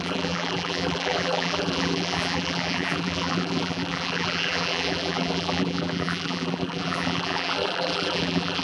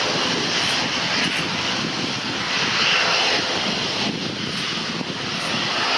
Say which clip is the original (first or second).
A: second